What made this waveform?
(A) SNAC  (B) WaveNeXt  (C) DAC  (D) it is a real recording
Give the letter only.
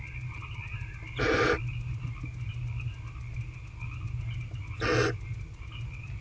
D